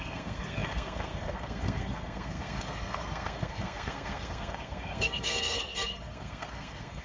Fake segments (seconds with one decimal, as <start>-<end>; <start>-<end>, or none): 0.0-7.0